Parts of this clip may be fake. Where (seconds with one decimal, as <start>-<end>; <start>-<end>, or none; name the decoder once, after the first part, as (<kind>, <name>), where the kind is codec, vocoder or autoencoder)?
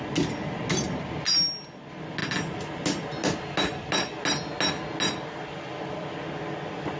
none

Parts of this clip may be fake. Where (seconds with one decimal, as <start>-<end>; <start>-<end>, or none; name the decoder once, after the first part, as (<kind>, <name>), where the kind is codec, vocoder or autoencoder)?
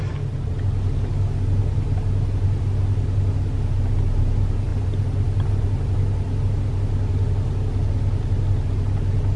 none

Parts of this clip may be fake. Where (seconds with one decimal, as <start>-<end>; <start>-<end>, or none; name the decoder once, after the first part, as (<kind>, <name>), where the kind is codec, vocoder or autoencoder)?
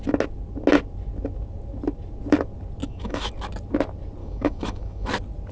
2.8-3.3 (autoencoder, DAC-VAE); 4.2-5.1